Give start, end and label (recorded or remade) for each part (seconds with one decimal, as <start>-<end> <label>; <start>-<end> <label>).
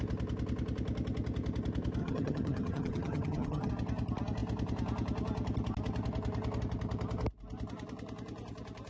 0.0-2.0 recorded; 2.0-3.7 remade; 3.7-8.9 recorded